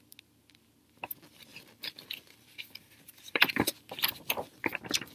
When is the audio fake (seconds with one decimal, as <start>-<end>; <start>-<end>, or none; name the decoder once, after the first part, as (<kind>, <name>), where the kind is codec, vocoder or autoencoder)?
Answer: 1.5-4.6 (vocoder, BigVGAN v2)